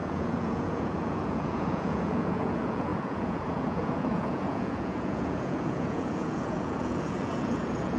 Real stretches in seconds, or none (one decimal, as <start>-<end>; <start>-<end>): none